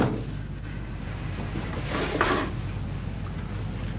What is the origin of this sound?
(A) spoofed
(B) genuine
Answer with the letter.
B